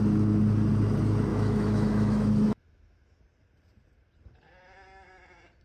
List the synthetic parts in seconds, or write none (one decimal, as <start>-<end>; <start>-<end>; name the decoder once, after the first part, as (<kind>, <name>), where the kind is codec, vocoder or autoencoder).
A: 1.3-3.2 (autoencoder, DAC-VAE)